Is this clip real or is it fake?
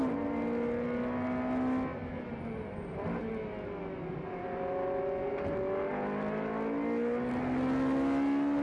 real